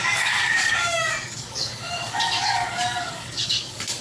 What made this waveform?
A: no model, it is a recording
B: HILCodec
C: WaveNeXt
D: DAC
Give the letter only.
D